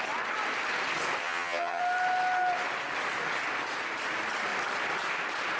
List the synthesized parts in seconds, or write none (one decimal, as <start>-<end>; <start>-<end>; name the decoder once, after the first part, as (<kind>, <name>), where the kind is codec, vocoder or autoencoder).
1.2-1.8 (vocoder, HiFi-GAN)